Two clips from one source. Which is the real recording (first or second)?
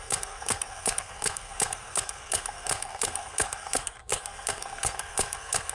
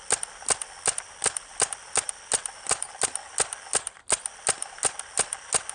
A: second